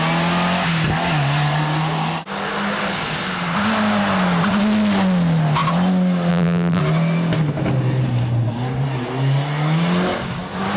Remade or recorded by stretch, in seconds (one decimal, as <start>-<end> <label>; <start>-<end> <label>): 0.0-6.3 recorded; 6.3-6.8 remade; 6.8-10.8 recorded

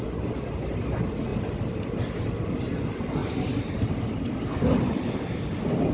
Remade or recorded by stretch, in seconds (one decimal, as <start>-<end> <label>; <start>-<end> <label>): 0.0-5.9 recorded